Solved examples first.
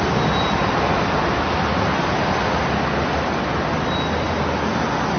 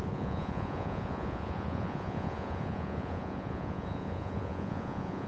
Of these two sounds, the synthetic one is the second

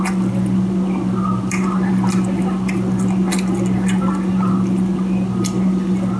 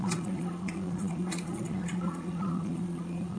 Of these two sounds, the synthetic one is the second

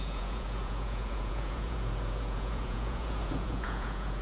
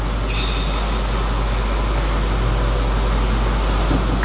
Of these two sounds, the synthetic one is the first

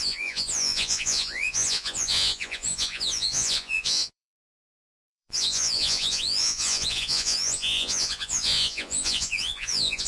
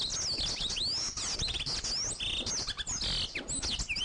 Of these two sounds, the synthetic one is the first